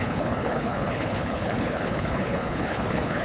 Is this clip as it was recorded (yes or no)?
no